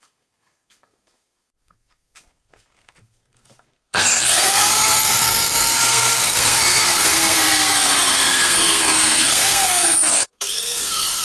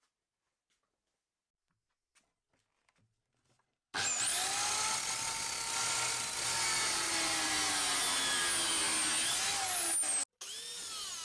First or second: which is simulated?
first